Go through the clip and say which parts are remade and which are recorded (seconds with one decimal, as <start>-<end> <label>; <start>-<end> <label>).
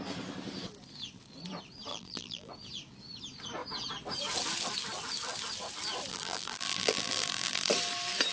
0.0-1.9 recorded; 1.9-2.5 remade; 2.5-6.1 recorded; 6.1-7.7 remade; 7.7-8.3 recorded